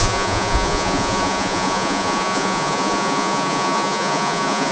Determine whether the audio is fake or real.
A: fake